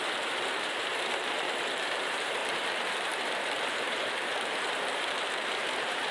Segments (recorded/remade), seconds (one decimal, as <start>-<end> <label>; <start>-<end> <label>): 0.0-6.1 remade